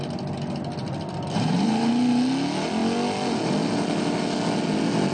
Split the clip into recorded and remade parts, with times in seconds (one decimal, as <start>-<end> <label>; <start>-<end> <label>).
0.0-0.8 recorded; 0.8-1.9 remade; 1.9-5.1 recorded